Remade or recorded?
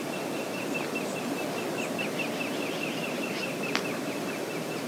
recorded